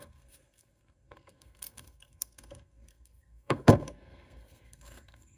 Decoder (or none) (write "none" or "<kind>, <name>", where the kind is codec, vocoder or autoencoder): codec, SNAC